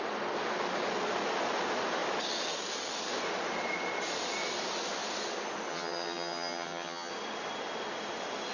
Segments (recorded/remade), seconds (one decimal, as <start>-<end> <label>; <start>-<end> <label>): 0.0-5.7 recorded; 5.7-7.1 remade; 7.1-8.5 recorded